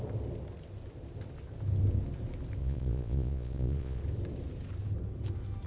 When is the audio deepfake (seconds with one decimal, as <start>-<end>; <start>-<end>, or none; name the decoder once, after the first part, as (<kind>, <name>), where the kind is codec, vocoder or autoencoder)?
2.6-4.0 (vocoder, Vocos)